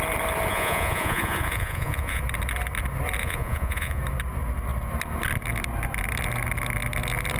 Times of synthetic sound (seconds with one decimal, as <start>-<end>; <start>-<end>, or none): 0.5-2.2; 3.2-4.0